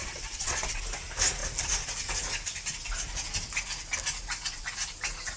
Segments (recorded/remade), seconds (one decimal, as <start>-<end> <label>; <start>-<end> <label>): 0.0-0.8 remade; 0.8-5.4 recorded

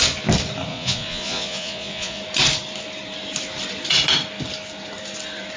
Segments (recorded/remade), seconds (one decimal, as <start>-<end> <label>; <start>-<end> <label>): 0.0-0.7 recorded; 0.7-2.2 remade; 2.2-5.6 recorded

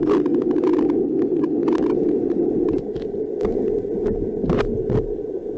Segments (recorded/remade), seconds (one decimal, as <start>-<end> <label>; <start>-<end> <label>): 0.0-5.6 recorded

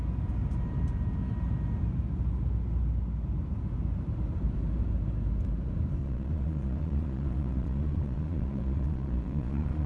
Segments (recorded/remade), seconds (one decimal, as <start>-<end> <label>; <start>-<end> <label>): 0.0-6.0 recorded; 6.0-9.9 remade